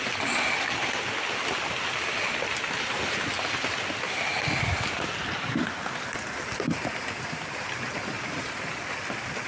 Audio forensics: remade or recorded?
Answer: recorded